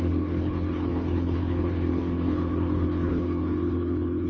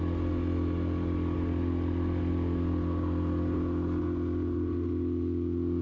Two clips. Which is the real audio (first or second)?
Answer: second